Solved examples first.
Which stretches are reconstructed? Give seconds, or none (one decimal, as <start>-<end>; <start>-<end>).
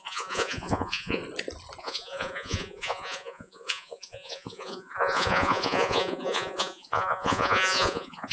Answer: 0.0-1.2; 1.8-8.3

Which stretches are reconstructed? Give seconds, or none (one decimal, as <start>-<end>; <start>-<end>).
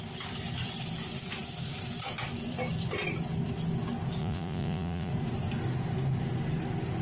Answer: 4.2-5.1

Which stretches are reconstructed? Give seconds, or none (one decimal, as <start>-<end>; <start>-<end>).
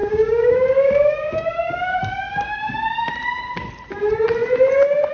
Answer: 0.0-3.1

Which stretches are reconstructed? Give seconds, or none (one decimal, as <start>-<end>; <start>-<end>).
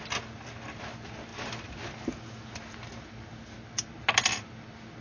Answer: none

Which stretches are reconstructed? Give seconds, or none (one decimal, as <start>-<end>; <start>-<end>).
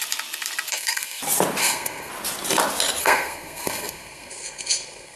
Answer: 0.7-1.2; 1.6-2.1; 3.0-5.2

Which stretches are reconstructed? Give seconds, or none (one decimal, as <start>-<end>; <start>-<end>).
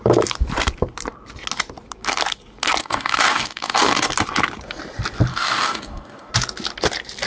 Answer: 2.8-4.1; 5.3-6.3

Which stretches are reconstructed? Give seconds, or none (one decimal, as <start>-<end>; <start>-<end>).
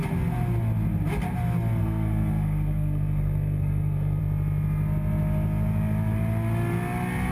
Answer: 1.8-4.2